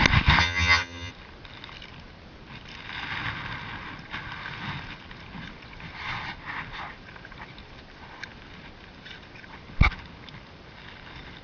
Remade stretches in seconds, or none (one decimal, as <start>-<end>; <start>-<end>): 0.4-1.1